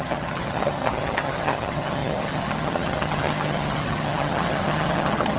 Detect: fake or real fake